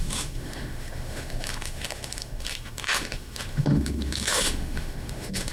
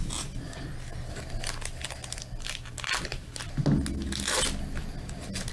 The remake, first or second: first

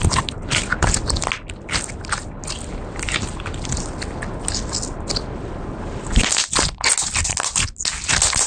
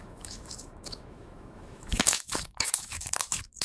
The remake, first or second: second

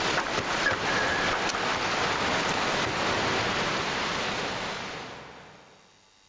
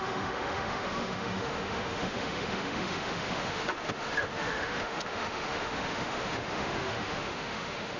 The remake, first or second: second